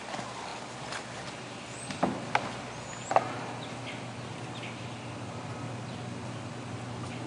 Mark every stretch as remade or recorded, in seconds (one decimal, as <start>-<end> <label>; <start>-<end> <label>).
0.0-7.3 recorded